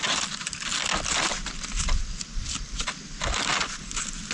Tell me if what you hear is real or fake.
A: real